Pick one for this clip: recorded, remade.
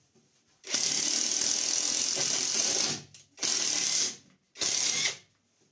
recorded